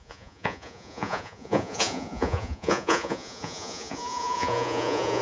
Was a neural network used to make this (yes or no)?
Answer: yes